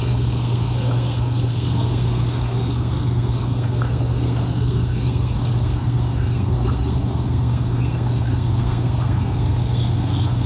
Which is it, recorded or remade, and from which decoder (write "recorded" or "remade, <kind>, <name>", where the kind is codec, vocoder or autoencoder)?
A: remade, codec, SNAC